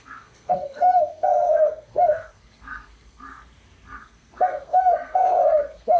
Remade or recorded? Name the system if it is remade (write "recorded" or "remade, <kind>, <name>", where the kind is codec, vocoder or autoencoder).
remade, codec, SNAC